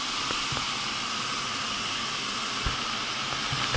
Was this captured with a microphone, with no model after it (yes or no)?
yes